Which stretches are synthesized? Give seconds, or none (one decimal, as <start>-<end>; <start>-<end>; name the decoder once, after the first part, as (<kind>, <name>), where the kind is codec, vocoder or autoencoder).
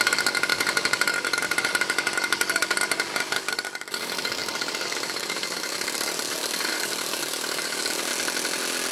0.0-8.1 (codec, DAC)